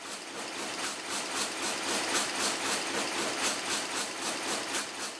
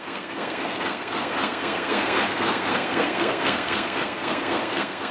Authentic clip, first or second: first